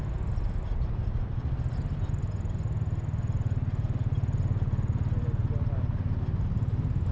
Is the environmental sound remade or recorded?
recorded